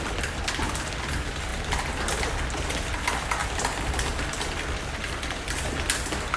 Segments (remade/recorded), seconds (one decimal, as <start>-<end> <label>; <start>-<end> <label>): 0.0-6.4 recorded